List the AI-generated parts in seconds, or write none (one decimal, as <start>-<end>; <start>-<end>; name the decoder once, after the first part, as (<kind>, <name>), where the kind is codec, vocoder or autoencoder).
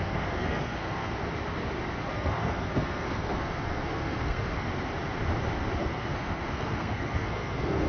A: 0.0-1.2 (codec, SNAC); 2.1-4.7; 5.8-7.9